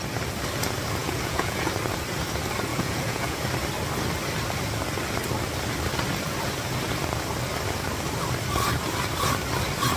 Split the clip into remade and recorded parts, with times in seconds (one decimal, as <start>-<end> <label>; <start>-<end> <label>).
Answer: 0.0-1.0 recorded; 1.0-1.7 remade; 1.7-2.7 recorded; 2.7-3.4 remade; 3.4-10.0 recorded